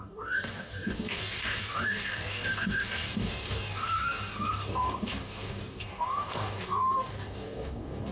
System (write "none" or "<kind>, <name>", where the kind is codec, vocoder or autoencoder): codec, DAC